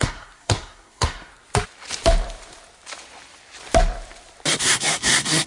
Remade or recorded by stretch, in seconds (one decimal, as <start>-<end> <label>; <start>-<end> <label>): 0.0-1.3 remade; 1.3-4.6 recorded; 4.6-5.5 remade